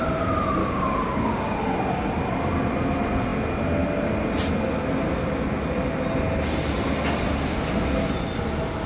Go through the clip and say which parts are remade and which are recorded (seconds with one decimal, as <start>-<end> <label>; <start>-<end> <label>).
0.0-0.6 recorded; 0.6-1.6 remade; 1.6-8.9 recorded